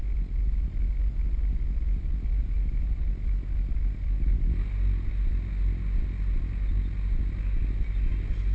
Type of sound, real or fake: real